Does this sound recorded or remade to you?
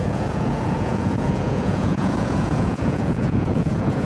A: remade